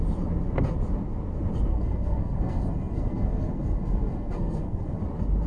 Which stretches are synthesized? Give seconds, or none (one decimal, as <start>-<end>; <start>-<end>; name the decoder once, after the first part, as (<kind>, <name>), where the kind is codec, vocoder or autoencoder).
1.7-5.0 (codec, SNAC)